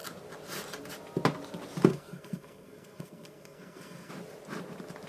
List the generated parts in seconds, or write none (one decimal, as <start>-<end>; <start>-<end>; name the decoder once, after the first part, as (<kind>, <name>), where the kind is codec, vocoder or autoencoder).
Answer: 1.9-4.1 (codec, SNAC)